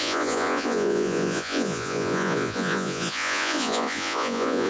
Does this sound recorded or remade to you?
remade